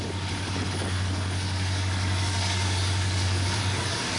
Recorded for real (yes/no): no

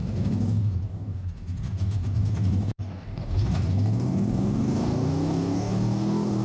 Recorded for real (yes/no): no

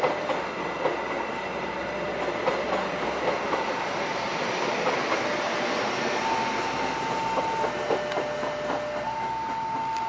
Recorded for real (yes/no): yes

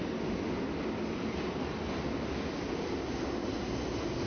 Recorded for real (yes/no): yes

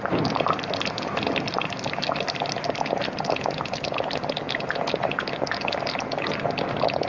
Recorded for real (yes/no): yes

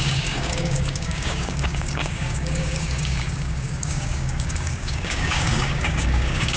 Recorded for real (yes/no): no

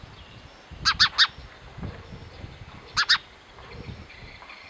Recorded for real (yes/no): yes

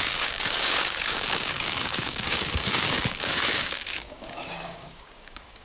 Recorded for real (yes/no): no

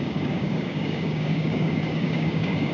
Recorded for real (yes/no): no